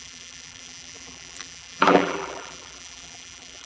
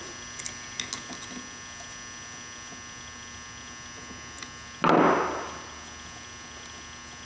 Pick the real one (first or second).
second